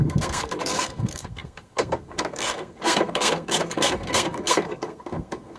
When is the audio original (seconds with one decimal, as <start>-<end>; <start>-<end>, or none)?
none